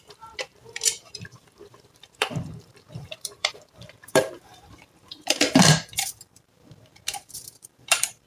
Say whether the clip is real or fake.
fake